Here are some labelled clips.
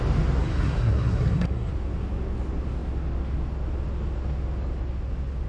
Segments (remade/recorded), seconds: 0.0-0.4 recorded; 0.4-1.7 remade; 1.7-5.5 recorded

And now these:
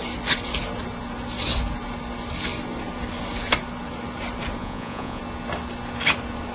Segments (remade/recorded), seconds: 0.0-4.6 recorded; 4.6-5.2 remade; 5.2-6.5 recorded

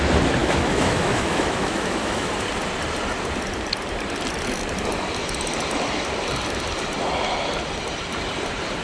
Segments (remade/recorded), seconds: 0.0-0.4 recorded; 0.4-2.3 remade; 2.3-8.8 recorded

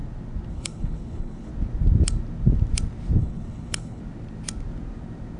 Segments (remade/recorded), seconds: 0.0-0.5 recorded; 0.5-1.5 remade; 1.5-3.2 recorded; 3.2-4.0 remade; 4.0-5.4 recorded

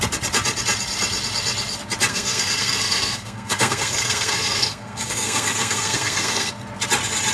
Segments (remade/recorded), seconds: 0.0-2.1 recorded; 2.1-6.5 remade; 6.5-7.3 recorded

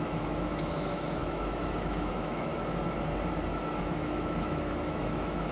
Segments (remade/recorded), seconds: 0.0-2.5 remade; 2.5-3.8 recorded; 3.8-5.5 remade

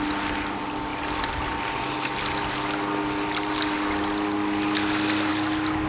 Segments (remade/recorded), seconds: 0.0-0.9 recorded; 0.9-1.8 remade; 1.8-5.9 recorded